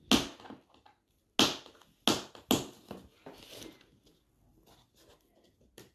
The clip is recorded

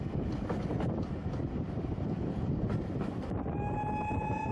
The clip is recorded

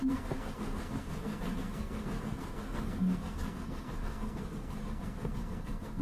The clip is remade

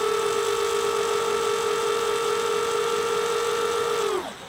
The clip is recorded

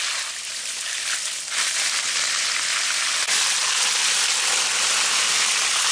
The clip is recorded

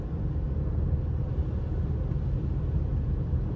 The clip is recorded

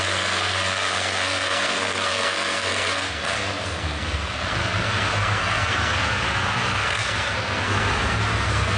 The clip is remade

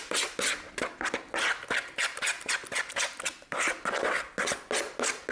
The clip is recorded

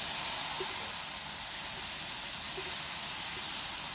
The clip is recorded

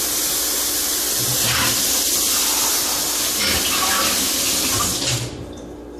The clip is recorded